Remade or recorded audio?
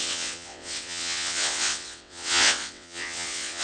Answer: remade